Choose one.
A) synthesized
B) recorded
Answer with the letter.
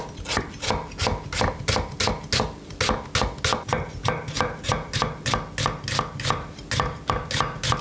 B